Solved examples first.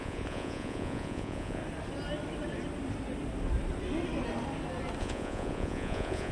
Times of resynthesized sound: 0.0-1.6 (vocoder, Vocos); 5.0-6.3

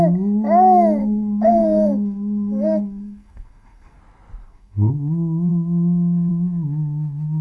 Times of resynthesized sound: 1.0-4.0 (codec, SNAC); 4.4-4.9

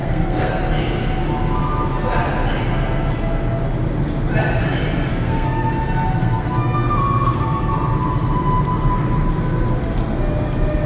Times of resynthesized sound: 0.0-0.6 (codec, SNAC); 5.1-5.7; 6.2-7.7

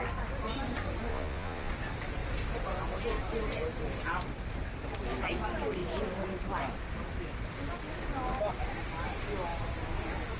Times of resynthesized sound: 1.1-1.7 (vocoder, Vocos)